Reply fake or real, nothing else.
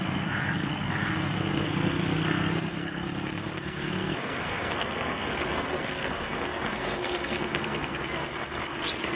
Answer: fake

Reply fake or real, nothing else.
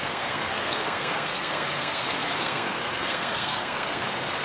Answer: fake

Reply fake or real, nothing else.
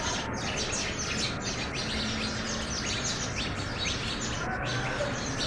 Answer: real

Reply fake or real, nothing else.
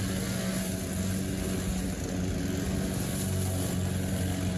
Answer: real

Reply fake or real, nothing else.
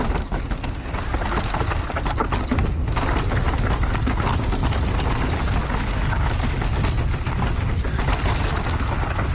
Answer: real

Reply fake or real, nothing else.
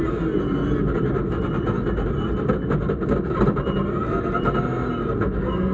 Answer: real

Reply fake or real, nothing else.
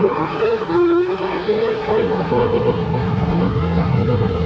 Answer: fake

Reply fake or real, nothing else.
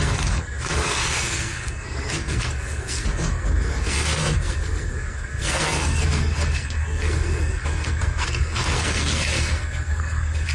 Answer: fake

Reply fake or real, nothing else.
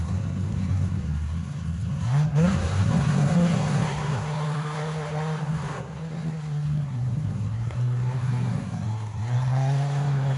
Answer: fake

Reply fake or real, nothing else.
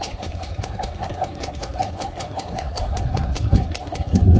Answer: fake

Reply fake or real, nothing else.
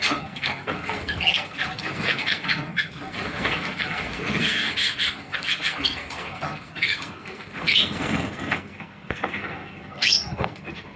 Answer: fake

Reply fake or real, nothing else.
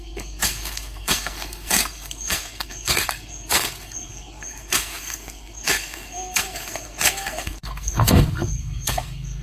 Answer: fake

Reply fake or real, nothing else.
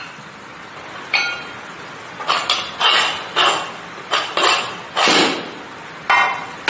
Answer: real